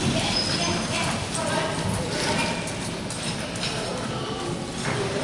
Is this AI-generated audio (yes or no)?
no